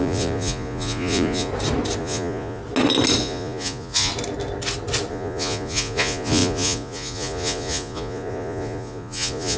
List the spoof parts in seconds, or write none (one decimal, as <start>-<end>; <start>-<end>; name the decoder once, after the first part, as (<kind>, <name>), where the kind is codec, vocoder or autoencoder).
0.0-1.5 (vocoder, Vocos); 2.0-2.6; 3.2-4.1; 5.1-9.6